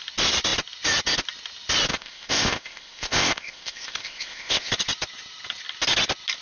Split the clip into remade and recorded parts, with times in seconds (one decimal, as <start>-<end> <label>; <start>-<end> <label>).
0.0-1.9 recorded; 1.9-4.7 remade; 4.7-6.4 recorded